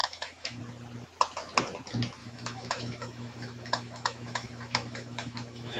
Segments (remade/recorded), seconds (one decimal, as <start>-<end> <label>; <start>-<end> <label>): 0.0-0.6 remade; 0.6-2.2 recorded; 2.2-5.8 remade